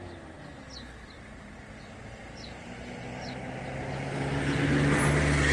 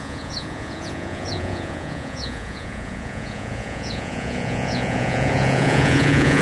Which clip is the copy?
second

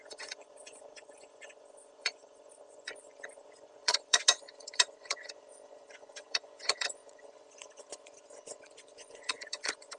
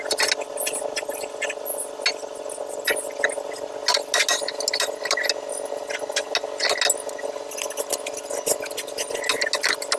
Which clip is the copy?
first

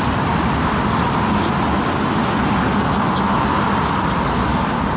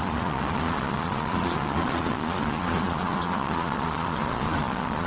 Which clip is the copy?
second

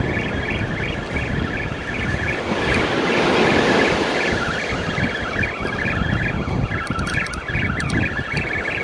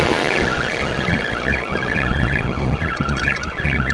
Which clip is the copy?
second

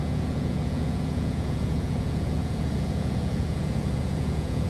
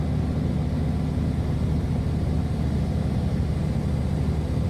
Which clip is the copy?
first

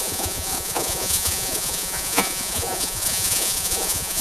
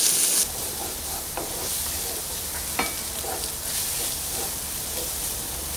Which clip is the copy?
first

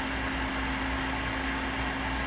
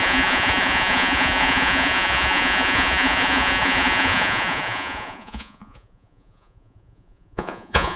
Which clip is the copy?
second